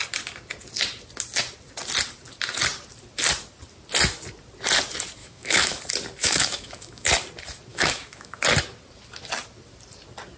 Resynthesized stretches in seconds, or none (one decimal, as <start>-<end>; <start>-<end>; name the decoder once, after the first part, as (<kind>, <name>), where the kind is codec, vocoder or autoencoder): 5.2-5.8 (autoencoder, DAC-VAE); 6.2-7.1; 7.7-8.4